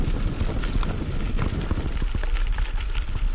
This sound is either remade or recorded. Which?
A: recorded